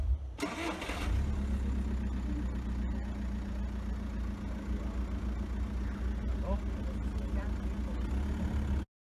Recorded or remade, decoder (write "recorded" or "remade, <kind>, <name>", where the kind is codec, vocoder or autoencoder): recorded